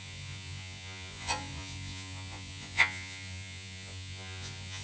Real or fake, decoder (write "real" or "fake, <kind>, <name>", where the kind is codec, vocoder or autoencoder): fake, vocoder, Vocos